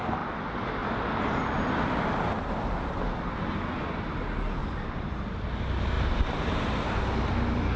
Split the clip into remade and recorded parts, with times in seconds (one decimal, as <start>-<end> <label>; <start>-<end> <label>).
0.0-0.8 recorded; 0.8-1.5 remade; 1.5-4.6 recorded; 4.6-7.0 remade; 7.0-7.8 recorded

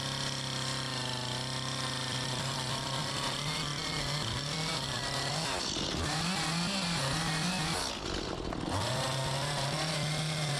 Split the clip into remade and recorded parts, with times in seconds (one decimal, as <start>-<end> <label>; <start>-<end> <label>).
0.0-10.6 recorded